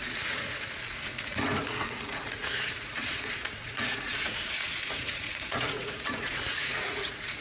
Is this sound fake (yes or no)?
yes